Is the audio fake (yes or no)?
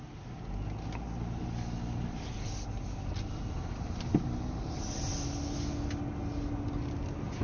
no